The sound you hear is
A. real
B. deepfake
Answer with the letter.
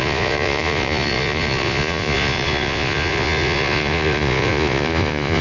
B